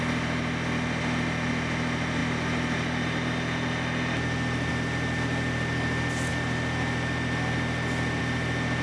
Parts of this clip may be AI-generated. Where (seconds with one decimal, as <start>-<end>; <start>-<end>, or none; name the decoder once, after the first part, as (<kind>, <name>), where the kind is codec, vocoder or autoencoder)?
none